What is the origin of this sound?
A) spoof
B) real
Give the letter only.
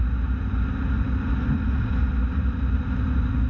B